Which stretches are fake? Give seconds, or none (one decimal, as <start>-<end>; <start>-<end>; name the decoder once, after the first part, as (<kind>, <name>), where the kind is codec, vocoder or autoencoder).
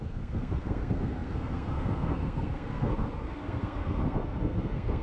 0.0-5.0 (codec, SNAC)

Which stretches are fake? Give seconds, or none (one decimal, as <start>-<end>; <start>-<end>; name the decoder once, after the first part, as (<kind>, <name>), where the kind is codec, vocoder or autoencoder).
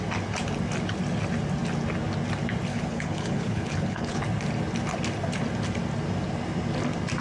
2.7-4.2 (codec, HILCodec)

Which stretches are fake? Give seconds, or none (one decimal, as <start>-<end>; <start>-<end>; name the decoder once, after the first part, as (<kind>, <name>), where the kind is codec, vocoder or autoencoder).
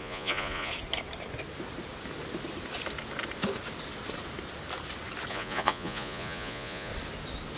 0.0-0.7 (vocoder, Vocos); 5.3-6.9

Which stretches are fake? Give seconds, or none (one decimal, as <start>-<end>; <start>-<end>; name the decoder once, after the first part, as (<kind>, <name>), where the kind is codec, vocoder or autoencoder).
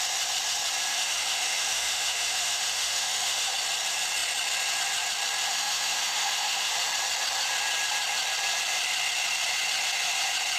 0.9-3.5 (autoencoder, DAC-VAE); 5.5-6.7